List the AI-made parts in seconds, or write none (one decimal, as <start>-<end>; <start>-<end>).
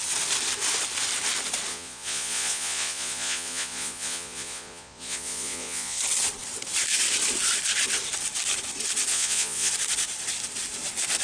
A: 1.7-6.0; 9.1-9.7